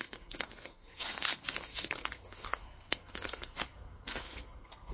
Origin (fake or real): fake